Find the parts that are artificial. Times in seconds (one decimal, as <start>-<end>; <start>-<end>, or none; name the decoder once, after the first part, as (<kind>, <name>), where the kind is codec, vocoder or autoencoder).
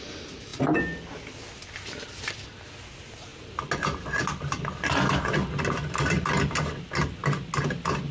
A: none